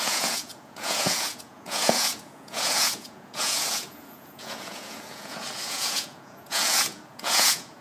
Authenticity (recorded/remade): remade